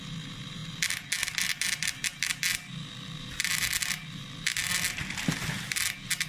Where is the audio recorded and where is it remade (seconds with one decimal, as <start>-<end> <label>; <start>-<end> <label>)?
0.0-6.3 recorded